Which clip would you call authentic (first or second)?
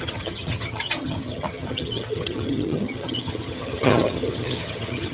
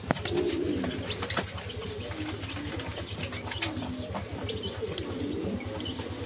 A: second